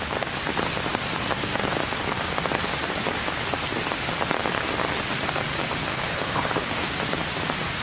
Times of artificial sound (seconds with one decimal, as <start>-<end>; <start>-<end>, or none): 5.9-6.9